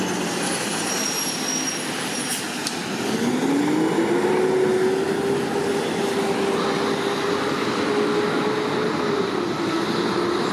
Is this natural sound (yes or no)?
yes